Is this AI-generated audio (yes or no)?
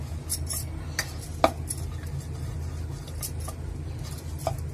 no